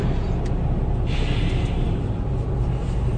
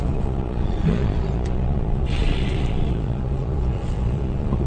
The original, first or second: first